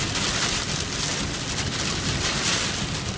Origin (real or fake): real